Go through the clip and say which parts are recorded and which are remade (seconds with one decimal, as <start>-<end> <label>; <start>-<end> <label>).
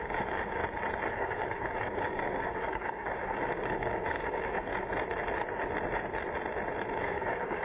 0.0-0.6 remade; 0.6-1.1 recorded; 1.1-4.7 remade; 4.7-7.0 recorded; 7.0-7.6 remade